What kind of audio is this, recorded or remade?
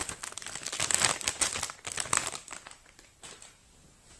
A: recorded